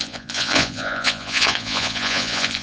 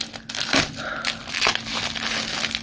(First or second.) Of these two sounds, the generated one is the first